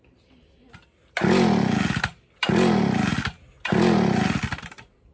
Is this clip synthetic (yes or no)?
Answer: no